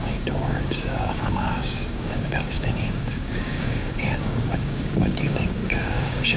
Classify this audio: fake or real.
fake